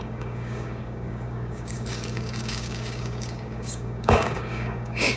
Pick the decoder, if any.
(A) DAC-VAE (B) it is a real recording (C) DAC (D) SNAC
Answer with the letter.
C